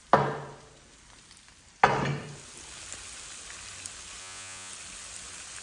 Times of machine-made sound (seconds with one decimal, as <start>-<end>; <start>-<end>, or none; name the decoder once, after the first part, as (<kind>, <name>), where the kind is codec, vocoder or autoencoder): 4.2-4.7 (vocoder, Vocos)